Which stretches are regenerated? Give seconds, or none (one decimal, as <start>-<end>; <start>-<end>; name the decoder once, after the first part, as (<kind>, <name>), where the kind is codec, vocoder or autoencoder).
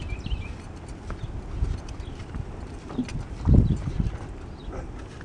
none